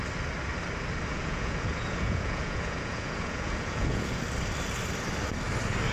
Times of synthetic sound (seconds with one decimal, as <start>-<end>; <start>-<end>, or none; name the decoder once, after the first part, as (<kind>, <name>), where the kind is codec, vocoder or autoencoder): 1.1-4.2 (vocoder, Vocos)